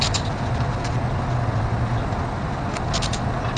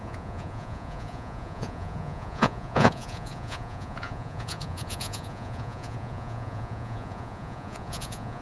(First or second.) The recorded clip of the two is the first